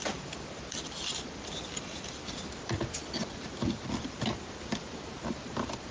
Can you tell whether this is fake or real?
real